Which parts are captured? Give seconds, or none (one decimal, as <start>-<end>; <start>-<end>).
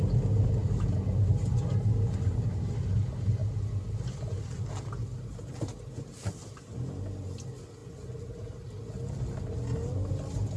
0.0-10.6